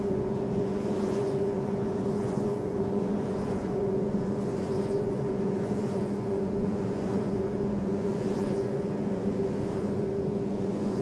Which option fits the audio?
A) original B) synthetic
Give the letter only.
B